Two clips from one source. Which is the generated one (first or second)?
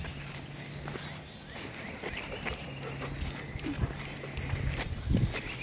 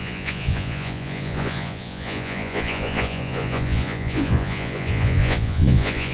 second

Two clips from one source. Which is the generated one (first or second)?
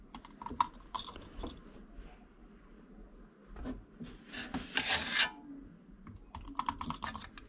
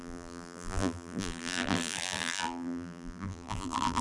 second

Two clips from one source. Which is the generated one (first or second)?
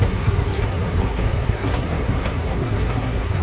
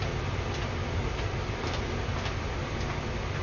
first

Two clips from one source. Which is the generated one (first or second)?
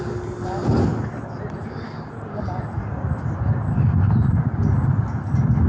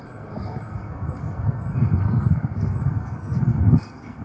second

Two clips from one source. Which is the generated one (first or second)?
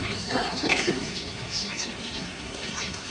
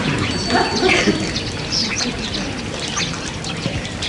first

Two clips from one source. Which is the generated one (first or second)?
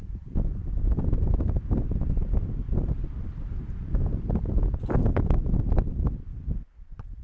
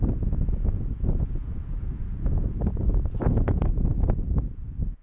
second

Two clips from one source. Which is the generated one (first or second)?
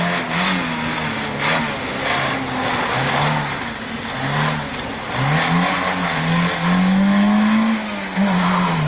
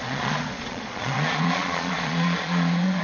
second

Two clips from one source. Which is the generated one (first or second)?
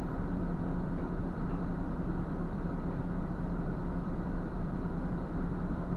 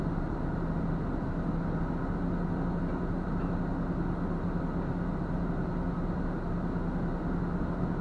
first